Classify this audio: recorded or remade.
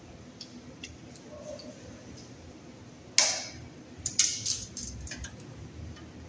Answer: recorded